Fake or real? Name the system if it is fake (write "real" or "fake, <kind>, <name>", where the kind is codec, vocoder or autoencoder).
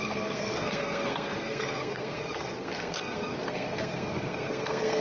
fake, codec, SNAC